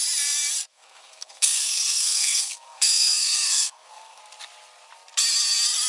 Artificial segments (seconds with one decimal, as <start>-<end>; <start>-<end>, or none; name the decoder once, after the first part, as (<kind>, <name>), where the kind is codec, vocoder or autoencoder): 0.7-4.2 (codec, SNAC)